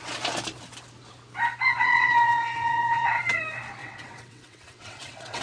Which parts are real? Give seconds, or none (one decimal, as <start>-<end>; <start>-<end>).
0.0-1.8; 3.4-3.8